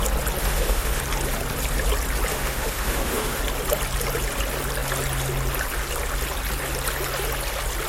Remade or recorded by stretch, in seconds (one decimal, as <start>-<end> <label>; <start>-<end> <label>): 0.0-0.4 recorded; 0.4-1.0 remade; 1.0-2.3 recorded; 2.3-3.4 remade; 3.4-7.9 recorded